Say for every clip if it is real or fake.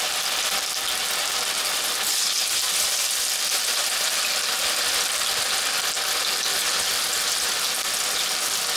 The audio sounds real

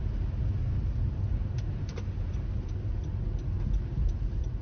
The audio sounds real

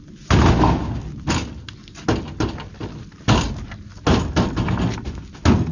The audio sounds real